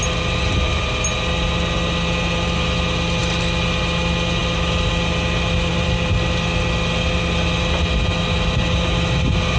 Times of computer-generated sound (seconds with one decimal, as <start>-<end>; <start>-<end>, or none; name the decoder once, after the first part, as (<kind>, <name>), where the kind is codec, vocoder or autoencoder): none